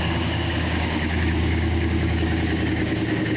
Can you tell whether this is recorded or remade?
remade